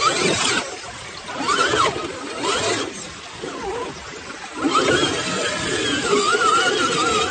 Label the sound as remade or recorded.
recorded